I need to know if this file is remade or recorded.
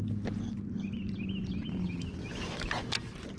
recorded